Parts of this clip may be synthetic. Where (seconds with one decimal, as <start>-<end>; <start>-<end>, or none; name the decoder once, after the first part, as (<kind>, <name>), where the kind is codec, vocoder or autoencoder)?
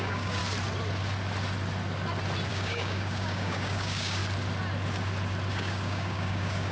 0.0-0.4 (codec, DAC); 2.5-4.2; 5.5-6.7